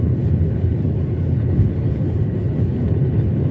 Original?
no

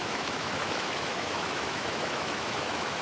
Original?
no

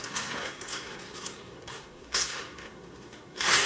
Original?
no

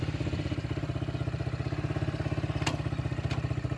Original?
yes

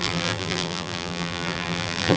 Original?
no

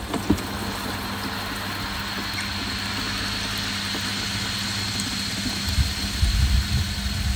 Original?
yes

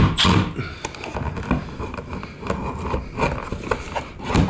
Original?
yes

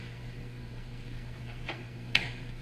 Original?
no